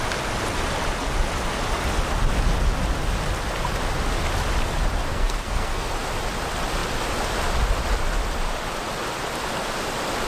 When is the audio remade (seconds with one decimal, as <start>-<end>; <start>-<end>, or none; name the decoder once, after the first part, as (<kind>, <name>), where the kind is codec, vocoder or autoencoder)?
5.1-5.9 (codec, SNAC)